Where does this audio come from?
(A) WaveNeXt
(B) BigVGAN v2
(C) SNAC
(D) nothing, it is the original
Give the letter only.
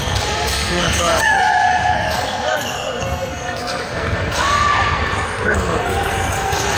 C